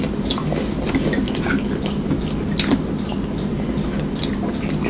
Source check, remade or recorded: recorded